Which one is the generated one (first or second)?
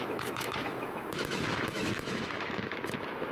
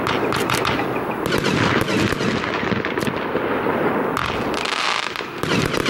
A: first